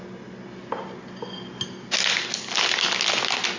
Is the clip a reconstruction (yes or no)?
no